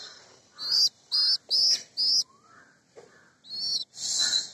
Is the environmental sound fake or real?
real